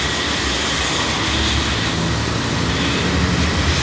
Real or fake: real